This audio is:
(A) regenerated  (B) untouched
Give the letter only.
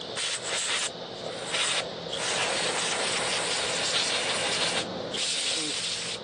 B